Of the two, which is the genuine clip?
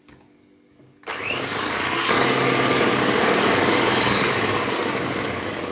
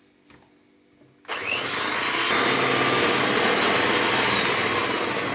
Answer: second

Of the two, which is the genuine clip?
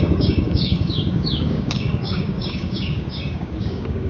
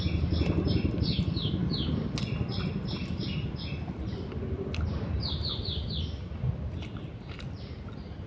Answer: second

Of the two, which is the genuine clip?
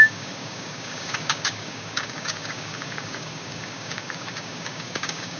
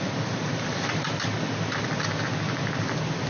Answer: second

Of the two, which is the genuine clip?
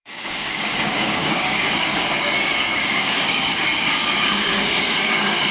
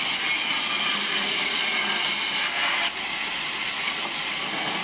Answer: second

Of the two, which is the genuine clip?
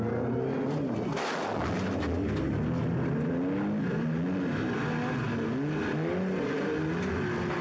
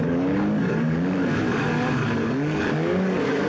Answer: first